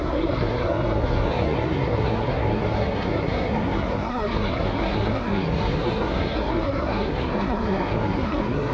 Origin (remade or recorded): remade